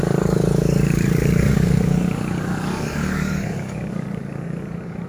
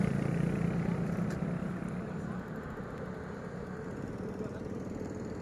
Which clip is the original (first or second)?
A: second